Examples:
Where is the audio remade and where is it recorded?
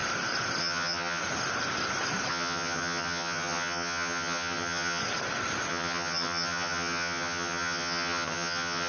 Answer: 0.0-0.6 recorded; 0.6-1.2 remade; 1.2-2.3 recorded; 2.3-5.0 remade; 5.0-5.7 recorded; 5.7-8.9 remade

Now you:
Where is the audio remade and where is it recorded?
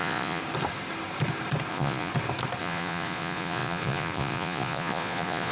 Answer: 0.0-0.4 remade; 0.4-1.7 recorded; 1.7-2.1 remade; 2.1-2.6 recorded; 2.6-5.5 remade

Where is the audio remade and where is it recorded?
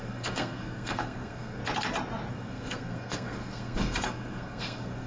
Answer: 0.0-1.6 remade; 1.6-2.3 recorded; 2.3-5.1 remade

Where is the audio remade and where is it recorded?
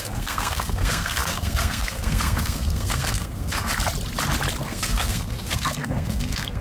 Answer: 0.0-3.7 remade; 3.7-4.6 recorded; 4.6-6.6 remade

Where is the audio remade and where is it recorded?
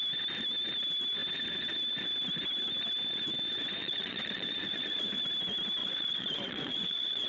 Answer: 0.0-3.8 recorded; 3.8-5.2 remade; 5.2-5.8 recorded; 5.8-7.3 remade